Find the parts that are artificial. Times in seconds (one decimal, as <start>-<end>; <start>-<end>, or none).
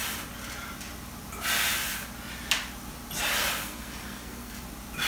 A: 3.6-4.6